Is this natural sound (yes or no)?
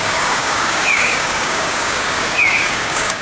no